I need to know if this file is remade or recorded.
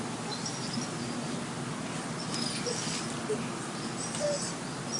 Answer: recorded